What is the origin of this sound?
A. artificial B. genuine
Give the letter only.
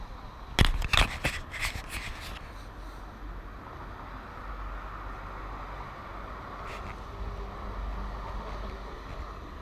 B